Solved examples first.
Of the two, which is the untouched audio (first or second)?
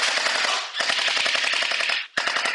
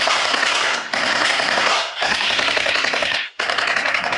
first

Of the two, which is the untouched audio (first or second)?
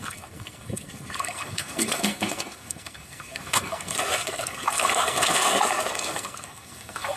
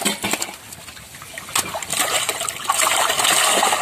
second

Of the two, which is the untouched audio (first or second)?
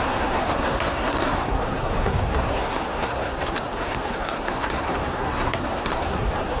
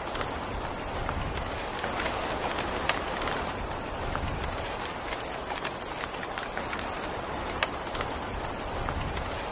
second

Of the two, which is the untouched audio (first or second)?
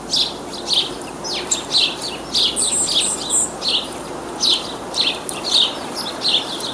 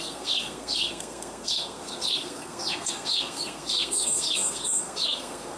first